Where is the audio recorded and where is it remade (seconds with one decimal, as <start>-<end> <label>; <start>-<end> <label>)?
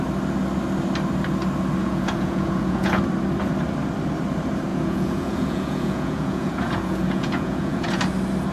0.0-1.8 recorded; 1.8-3.0 remade; 3.0-4.7 recorded; 4.7-8.0 remade; 8.0-8.5 recorded